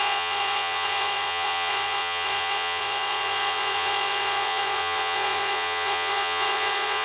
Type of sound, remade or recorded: remade